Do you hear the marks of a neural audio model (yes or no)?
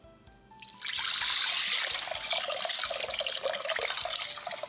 no